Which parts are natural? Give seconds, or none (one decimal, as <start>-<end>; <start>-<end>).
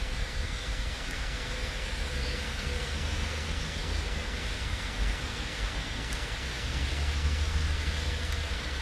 none